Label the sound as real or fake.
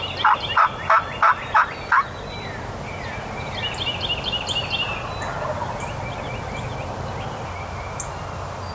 real